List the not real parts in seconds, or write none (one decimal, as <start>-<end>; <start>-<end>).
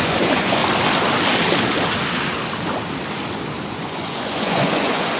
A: 0.0-0.6; 3.7-5.2